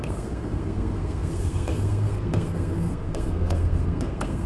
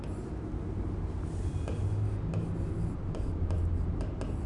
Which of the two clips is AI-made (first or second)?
first